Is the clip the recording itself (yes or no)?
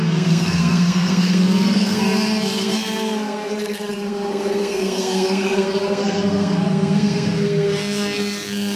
no